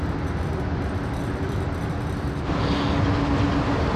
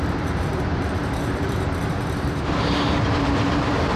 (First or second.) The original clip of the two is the first